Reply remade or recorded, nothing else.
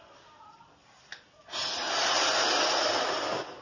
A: recorded